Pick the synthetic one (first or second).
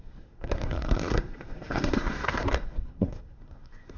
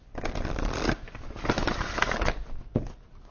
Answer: first